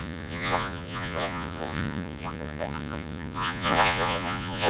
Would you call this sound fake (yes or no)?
yes